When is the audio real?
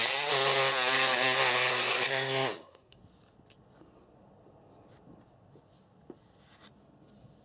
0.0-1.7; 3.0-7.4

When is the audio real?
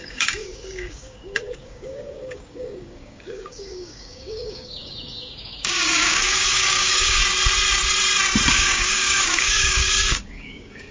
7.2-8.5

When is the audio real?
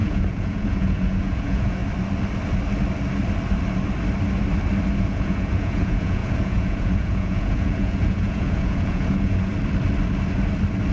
1.8-5.0; 9.5-10.9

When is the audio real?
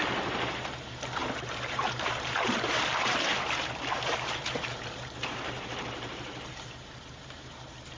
none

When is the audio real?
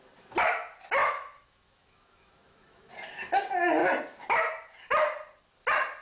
0.0-1.0; 2.9-6.0